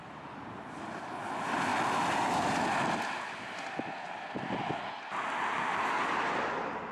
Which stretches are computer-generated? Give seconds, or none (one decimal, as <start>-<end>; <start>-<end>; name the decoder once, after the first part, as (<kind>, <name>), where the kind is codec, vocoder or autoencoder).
none